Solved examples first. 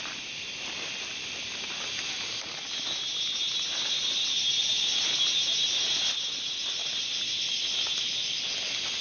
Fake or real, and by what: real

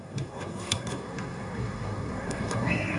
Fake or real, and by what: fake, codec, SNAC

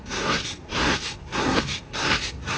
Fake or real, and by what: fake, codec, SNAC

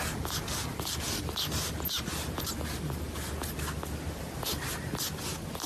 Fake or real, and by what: real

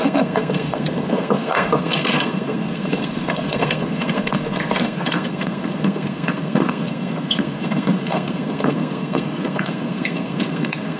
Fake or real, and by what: fake, codec, SNAC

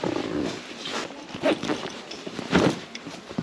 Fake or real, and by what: real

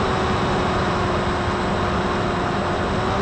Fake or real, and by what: real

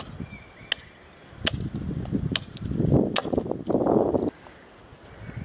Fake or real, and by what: real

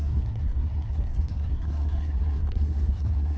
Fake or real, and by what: fake, codec, SNAC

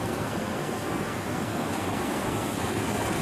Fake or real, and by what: fake, codec, SNAC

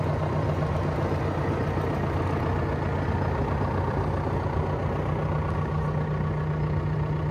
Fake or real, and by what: real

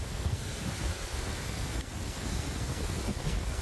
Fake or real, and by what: fake, codec, SNAC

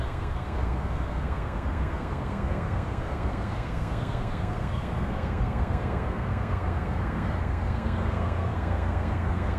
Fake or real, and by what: fake, codec, SNAC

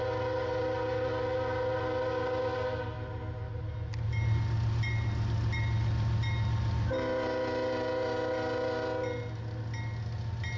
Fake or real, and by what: real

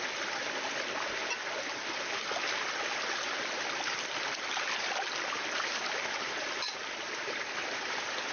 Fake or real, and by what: real